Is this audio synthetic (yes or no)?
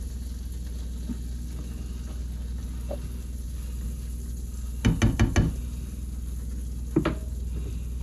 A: no